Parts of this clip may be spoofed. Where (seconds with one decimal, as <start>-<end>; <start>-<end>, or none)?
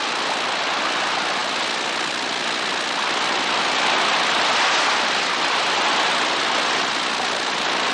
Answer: none